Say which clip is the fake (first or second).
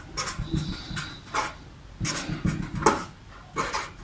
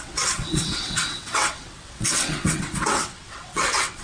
second